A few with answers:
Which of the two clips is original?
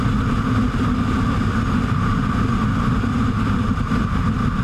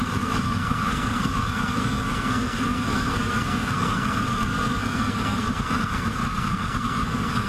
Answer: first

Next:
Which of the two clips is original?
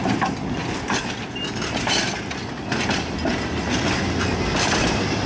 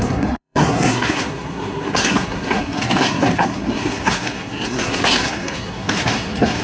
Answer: first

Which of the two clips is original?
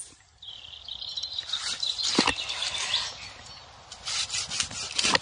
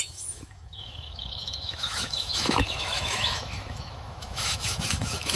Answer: first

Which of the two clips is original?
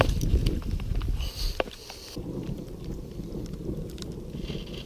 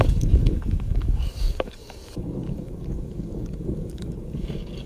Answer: first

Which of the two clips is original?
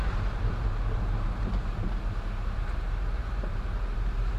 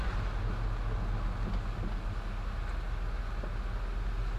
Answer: second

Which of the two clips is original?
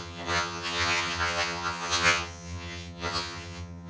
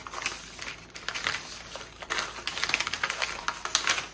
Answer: second